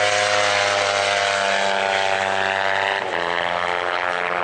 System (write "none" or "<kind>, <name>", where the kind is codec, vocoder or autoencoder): none